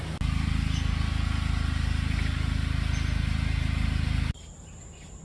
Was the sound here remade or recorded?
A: recorded